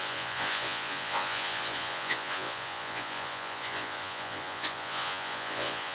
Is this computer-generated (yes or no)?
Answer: yes